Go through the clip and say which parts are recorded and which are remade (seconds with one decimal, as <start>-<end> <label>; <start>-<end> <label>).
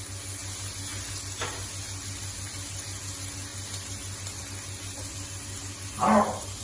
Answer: 0.0-6.6 recorded